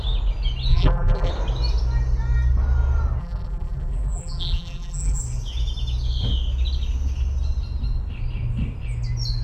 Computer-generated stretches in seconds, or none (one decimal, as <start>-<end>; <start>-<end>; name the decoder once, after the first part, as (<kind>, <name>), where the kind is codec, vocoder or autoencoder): 0.7-1.3 (vocoder, BigVGAN v2); 3.2-5.2